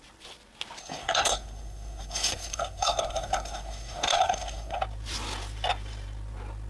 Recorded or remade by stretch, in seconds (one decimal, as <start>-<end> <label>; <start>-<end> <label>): 0.0-0.8 recorded; 0.8-4.8 remade; 4.8-6.7 recorded